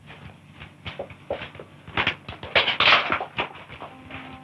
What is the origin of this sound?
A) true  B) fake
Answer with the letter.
A